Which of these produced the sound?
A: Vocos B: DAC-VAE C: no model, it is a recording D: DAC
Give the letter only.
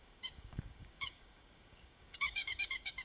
D